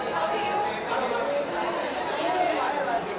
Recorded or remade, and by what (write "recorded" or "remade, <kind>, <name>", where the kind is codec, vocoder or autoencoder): recorded